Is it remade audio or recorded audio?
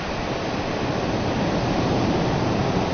recorded